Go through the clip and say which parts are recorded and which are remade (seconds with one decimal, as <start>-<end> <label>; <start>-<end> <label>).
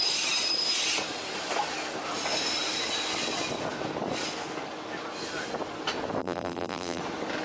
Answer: 0.0-6.2 recorded; 6.2-7.0 remade; 7.0-7.4 recorded